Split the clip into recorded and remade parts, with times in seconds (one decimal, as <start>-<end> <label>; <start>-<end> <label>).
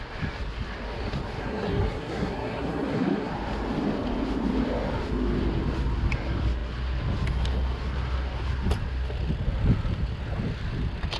0.0-1.4 recorded; 1.4-3.3 remade; 3.3-11.2 recorded